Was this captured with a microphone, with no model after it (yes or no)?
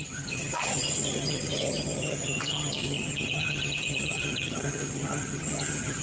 no